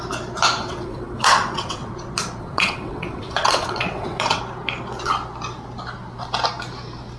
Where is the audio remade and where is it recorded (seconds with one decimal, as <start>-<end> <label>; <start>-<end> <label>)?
0.0-0.6 recorded; 0.6-1.9 remade; 1.9-2.4 recorded; 2.4-4.4 remade; 4.4-7.2 recorded